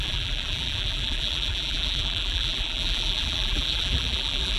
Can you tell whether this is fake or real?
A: fake